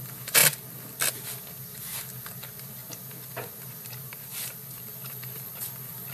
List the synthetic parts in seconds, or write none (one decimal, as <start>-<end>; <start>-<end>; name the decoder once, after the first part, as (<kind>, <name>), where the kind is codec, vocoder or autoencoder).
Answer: none